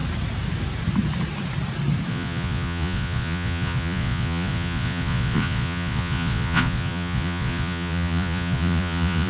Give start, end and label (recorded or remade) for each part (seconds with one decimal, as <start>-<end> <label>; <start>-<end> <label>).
0.0-2.1 recorded; 2.1-9.3 remade

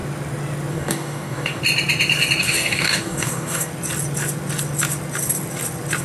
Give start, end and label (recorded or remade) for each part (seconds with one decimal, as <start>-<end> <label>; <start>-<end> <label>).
0.0-0.7 recorded; 0.7-1.6 remade; 1.6-2.4 recorded; 2.4-3.7 remade; 3.7-6.0 recorded

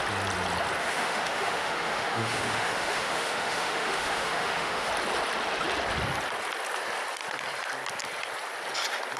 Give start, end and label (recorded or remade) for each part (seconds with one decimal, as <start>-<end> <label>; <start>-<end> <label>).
0.0-0.8 recorded; 0.8-4.9 remade; 4.9-9.2 recorded

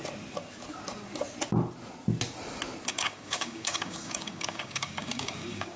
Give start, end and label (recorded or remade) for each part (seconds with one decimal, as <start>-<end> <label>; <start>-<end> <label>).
0.0-2.9 recorded; 2.9-5.8 remade